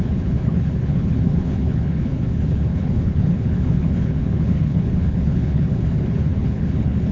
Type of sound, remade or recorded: remade